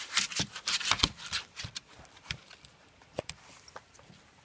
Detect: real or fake fake